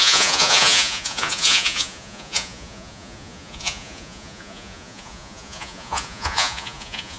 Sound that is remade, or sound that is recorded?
remade